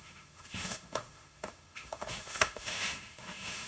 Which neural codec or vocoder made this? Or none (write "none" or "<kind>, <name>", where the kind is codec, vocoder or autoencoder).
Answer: autoencoder, DAC-VAE